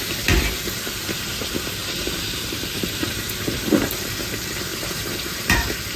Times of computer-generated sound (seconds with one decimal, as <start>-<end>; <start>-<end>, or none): 1.8-4.0; 4.7-6.0

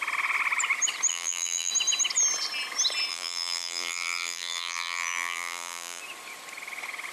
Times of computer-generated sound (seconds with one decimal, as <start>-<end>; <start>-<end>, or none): 1.1-1.7; 3.1-6.0

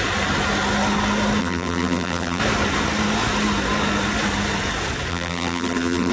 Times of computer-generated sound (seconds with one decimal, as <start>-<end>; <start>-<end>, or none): 1.4-2.4; 5.1-6.1

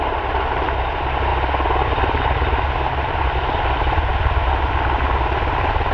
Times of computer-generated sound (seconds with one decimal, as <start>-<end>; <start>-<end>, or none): 0.0-1.3; 2.9-4.1; 5.4-5.9